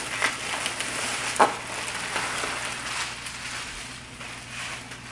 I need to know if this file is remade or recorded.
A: recorded